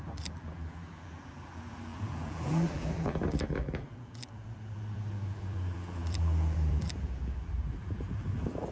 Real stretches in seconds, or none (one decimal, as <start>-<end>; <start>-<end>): none